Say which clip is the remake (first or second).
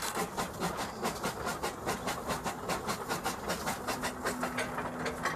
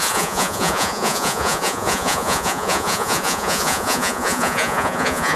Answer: second